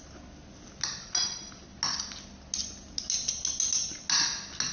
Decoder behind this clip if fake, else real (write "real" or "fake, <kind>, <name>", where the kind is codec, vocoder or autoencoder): real